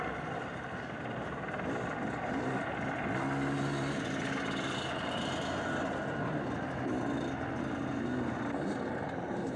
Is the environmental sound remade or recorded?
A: recorded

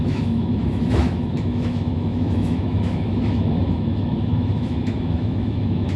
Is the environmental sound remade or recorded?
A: remade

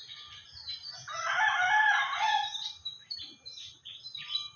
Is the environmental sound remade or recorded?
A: recorded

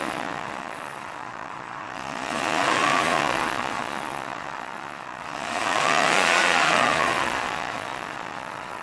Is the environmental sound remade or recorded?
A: remade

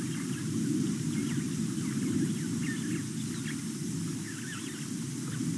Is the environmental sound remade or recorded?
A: recorded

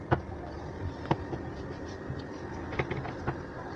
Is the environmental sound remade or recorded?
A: recorded